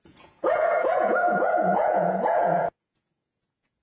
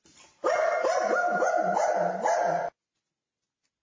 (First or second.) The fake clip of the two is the first